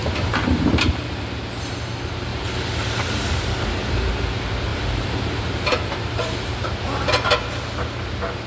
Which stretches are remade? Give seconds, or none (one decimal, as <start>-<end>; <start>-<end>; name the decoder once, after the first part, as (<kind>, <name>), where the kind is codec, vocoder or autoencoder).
0.0-1.4 (vocoder, BigVGAN v2); 2.3-4.1; 4.7-6.7